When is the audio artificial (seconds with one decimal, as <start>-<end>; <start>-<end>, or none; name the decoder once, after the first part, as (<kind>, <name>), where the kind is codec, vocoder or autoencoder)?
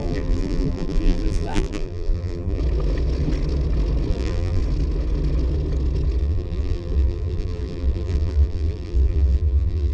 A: 0.0-2.6 (vocoder, BigVGAN v2); 4.1-4.6; 6.2-9.9